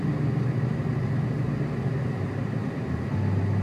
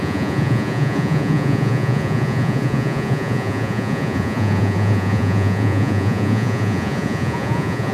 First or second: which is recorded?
first